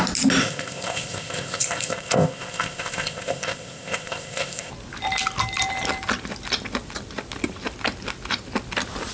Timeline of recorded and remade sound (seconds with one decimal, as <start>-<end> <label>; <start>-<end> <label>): 0.0-0.4 recorded; 0.4-4.7 remade; 4.7-9.1 recorded

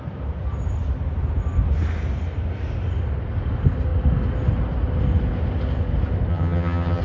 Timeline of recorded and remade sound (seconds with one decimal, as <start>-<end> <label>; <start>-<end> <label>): 0.0-6.3 recorded; 6.3-7.0 remade